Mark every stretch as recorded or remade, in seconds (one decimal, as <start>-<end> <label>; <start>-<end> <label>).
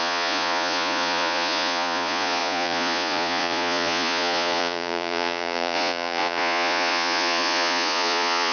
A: 0.0-8.5 remade